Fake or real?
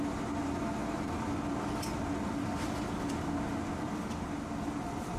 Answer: real